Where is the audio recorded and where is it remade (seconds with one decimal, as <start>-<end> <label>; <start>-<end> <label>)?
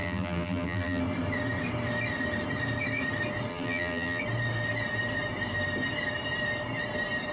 0.0-1.0 remade; 1.0-3.5 recorded; 3.5-4.2 remade; 4.2-7.3 recorded